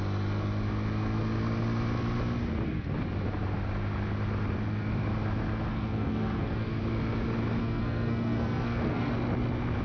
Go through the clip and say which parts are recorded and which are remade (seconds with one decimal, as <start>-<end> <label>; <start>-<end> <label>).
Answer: 0.0-5.7 recorded; 5.7-6.8 remade; 6.8-7.6 recorded; 7.6-9.1 remade; 9.1-9.8 recorded